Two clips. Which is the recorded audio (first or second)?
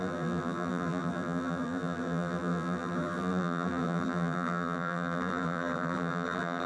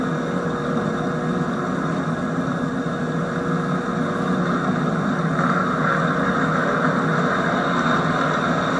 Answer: second